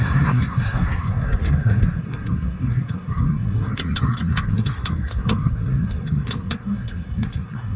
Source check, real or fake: fake